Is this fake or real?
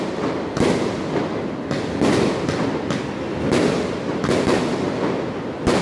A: real